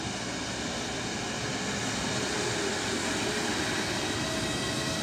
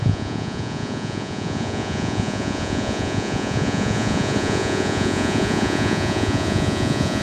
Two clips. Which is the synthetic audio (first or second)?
second